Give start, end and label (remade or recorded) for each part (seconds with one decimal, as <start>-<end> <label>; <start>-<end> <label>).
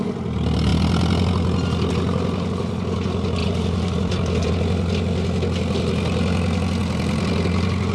0.0-3.4 recorded; 3.4-4.5 remade; 4.5-6.8 recorded; 6.8-7.3 remade; 7.3-7.9 recorded